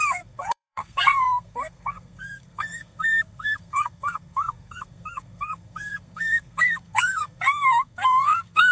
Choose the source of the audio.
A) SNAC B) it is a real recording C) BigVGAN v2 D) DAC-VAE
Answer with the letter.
A